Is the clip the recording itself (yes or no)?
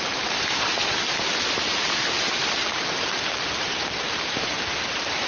no